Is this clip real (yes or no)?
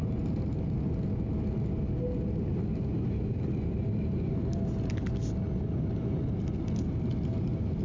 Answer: yes